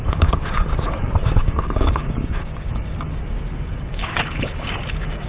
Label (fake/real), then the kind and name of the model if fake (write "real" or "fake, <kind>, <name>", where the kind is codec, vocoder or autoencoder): fake, codec, DAC